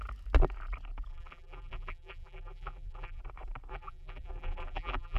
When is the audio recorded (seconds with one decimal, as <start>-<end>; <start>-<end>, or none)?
0.0-1.1; 3.2-3.7